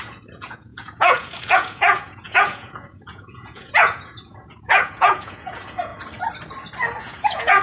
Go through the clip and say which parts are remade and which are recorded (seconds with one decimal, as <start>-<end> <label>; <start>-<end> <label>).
0.0-5.9 remade; 5.9-7.0 recorded; 7.0-7.6 remade

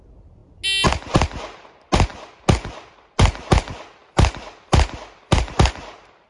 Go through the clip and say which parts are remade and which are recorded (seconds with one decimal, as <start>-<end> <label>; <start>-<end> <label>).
0.0-4.0 recorded; 4.0-5.3 remade; 5.3-6.3 recorded